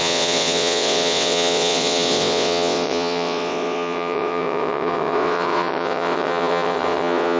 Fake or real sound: fake